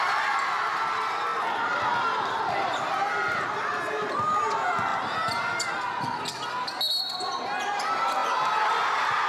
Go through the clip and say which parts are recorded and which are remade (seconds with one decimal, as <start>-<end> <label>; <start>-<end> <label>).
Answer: 0.0-9.3 recorded